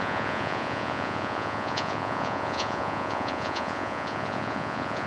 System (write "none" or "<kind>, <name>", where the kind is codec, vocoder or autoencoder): vocoder, Vocos